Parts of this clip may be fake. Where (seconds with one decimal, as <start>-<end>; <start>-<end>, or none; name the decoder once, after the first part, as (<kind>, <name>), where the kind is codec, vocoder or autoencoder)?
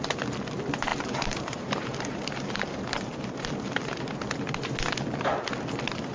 0.9-4.0 (vocoder, BigVGAN v2)